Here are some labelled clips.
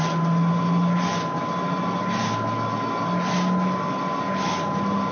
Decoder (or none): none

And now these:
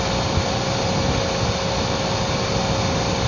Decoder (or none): none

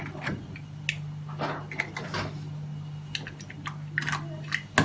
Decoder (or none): none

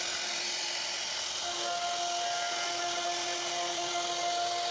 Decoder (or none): none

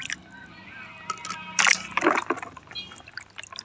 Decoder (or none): none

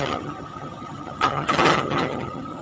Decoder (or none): vocoder, HiFi-GAN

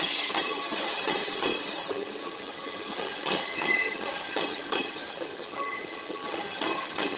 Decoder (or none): vocoder, HiFi-GAN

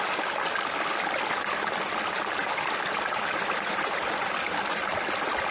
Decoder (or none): none